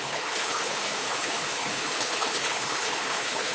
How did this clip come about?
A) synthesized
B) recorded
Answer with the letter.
A